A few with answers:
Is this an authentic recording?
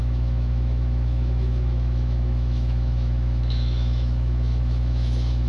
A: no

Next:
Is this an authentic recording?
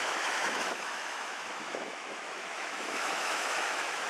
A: no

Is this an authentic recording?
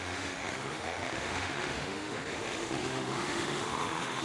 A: no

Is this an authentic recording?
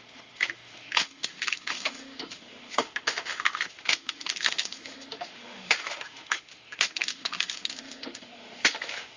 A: no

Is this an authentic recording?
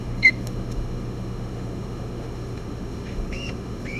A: no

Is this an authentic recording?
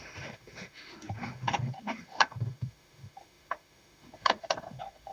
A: no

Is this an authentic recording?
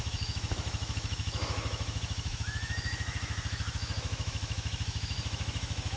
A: no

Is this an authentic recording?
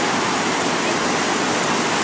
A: yes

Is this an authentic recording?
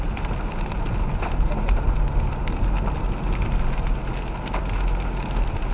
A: yes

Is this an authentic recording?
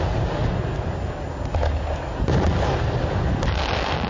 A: yes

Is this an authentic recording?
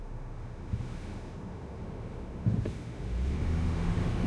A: no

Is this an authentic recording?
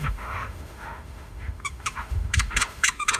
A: no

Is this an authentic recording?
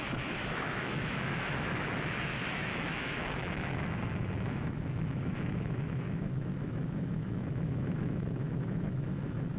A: no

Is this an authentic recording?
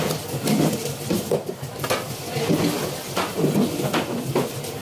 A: yes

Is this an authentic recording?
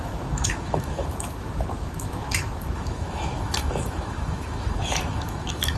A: no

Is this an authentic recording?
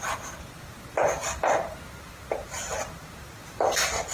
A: yes